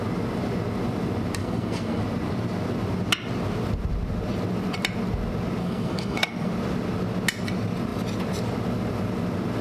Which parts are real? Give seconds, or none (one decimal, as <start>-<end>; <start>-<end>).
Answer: 0.0-1.4; 2.0-5.6; 6.5-9.6